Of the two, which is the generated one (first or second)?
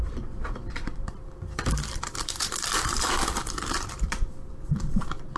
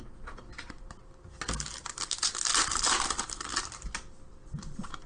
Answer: first